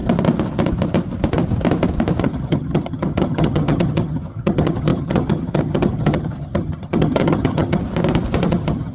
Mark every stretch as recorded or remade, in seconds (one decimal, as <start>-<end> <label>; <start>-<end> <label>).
0.0-2.2 recorded; 2.2-7.8 remade; 7.8-8.5 recorded; 8.5-8.9 remade